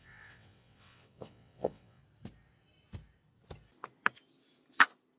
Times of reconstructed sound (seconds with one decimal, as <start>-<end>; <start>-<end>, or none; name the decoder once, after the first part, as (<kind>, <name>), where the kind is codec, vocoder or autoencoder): 0.0-2.0 (vocoder, WaveNeXt)